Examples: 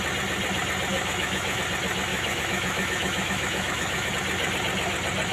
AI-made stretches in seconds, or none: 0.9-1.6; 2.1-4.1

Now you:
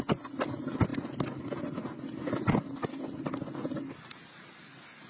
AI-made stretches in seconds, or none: none